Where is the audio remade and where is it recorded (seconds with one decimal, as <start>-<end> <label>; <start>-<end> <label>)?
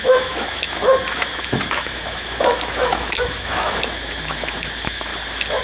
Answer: 0.0-5.1 remade; 5.1-5.6 recorded